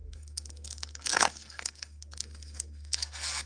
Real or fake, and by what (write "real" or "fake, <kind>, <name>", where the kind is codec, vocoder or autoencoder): fake, codec, SNAC